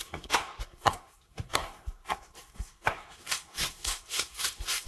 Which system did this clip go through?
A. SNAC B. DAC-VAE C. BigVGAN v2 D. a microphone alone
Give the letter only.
A